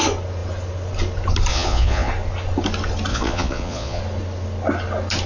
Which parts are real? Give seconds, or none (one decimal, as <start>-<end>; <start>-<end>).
0.0-1.5; 2.1-3.1; 4.0-5.3